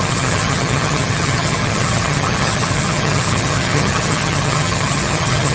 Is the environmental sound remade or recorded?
remade